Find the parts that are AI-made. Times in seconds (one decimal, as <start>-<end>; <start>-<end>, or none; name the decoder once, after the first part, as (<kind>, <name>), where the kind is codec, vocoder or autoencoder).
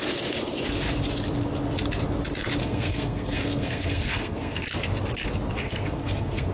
2.6-4.7 (codec, SNAC); 5.6-6.5